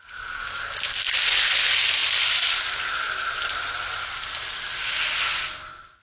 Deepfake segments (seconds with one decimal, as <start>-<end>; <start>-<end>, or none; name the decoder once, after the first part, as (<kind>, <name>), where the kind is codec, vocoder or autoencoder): none

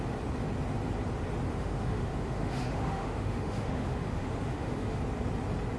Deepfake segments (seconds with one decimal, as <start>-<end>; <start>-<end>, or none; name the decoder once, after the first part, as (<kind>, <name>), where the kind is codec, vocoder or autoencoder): 1.5-5.0 (autoencoder, DAC-VAE)

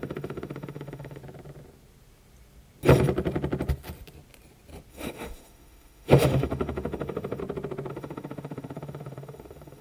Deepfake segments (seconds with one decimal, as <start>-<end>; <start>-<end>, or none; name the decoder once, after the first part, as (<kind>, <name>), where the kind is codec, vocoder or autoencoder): 0.0-1.2 (autoencoder, DAC-VAE); 4.9-7.4; 7.9-9.8

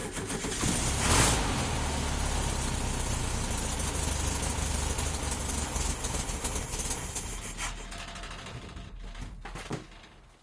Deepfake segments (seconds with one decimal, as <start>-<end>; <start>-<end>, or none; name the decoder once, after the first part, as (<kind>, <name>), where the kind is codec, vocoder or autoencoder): none

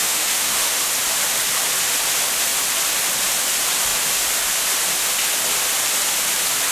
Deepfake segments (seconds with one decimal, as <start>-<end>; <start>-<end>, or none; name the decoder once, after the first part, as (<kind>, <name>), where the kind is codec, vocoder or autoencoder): 0.0-0.8 (autoencoder, DAC-VAE)

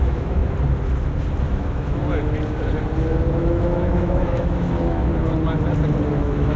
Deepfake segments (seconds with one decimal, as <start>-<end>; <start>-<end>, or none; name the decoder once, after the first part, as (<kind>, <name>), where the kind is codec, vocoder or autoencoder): 0.0-0.4 (autoencoder, DAC-VAE); 1.4-2.0; 3.4-5.1; 6.1-6.6